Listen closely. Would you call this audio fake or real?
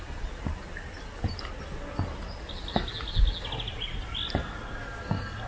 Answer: real